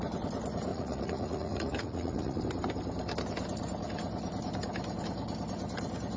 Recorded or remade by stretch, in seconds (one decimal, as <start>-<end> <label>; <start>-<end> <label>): 0.0-0.7 recorded; 0.7-2.4 remade; 2.4-6.2 recorded